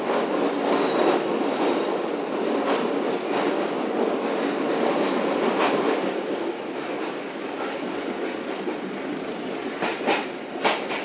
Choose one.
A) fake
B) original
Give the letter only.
B